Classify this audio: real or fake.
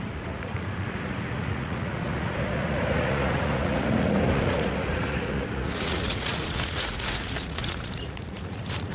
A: fake